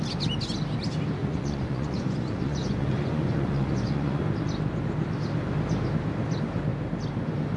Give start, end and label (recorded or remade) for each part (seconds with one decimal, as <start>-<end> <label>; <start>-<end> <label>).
0.0-1.2 recorded; 1.2-4.2 remade; 4.2-7.6 recorded